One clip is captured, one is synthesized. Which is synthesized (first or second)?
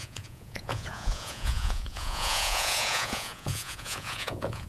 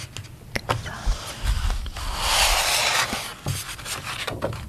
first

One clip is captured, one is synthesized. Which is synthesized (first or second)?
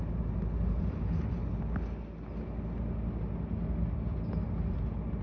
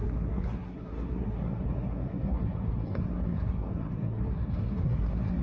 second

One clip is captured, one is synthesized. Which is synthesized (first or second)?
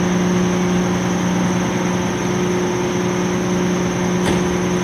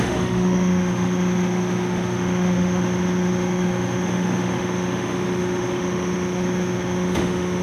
second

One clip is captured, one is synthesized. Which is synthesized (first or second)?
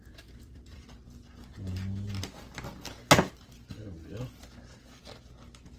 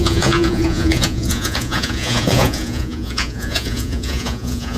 second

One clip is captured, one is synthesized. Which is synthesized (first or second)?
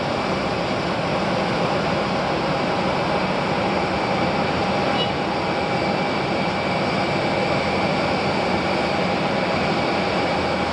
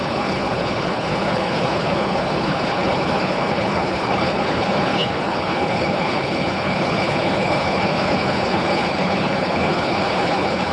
second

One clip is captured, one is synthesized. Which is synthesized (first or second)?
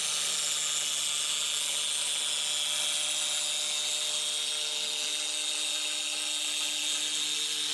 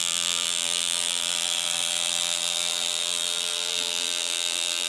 second